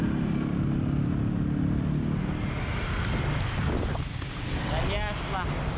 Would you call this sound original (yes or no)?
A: yes